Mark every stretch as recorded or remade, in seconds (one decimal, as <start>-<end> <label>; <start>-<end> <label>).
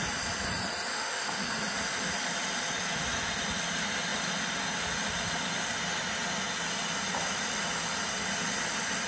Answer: 0.0-0.9 recorded; 0.9-1.4 remade; 1.4-9.1 recorded